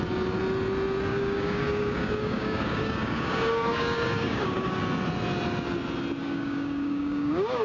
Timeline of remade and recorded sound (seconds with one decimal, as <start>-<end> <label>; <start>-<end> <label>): 0.0-1.1 recorded; 1.1-4.8 remade; 4.8-6.2 recorded; 6.2-7.6 remade